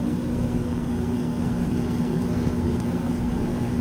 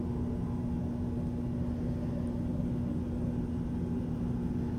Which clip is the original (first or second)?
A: second